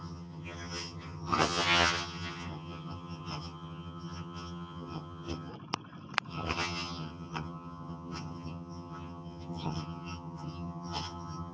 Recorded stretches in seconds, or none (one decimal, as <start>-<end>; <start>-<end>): 5.5-6.3